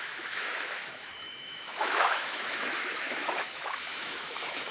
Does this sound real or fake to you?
fake